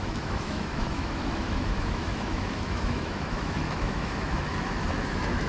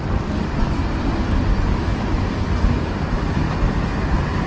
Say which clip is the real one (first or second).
second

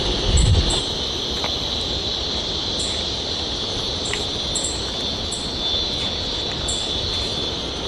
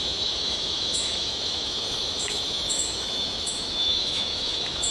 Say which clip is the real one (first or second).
first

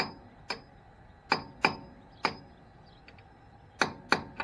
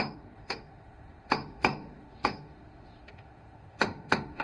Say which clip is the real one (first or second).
first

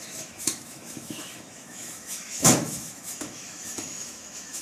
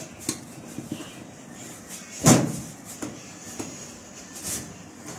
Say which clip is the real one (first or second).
second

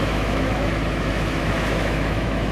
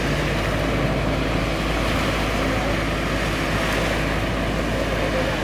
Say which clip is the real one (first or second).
second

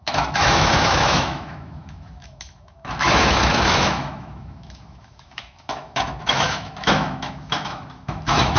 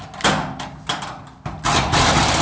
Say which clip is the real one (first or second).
second